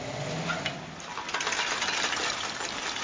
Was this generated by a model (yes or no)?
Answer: no